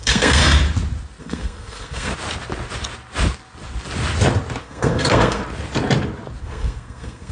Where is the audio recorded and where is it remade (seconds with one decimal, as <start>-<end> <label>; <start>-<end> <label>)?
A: 0.0-0.4 remade; 0.4-1.2 recorded; 1.2-2.1 remade; 2.1-4.6 recorded; 4.6-5.4 remade; 5.4-6.4 recorded; 6.4-7.3 remade